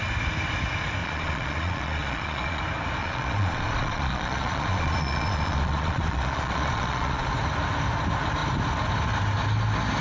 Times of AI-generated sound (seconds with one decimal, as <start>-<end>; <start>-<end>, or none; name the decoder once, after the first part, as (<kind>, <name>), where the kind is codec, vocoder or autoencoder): 1.0-2.6 (vocoder, Vocos); 3.0-7.3